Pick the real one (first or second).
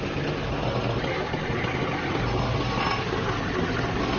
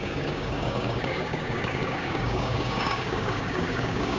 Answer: first